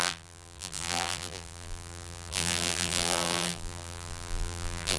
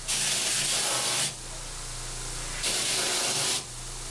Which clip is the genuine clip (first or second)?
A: second